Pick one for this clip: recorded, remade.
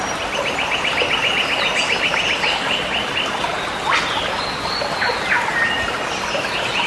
recorded